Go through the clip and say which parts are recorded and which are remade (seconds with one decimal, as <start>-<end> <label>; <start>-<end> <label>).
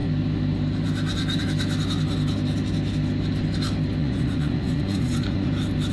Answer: 0.0-4.0 recorded; 4.0-5.5 remade; 5.5-5.9 recorded